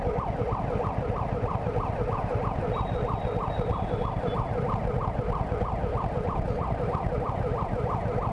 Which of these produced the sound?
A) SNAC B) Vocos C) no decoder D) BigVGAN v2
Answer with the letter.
C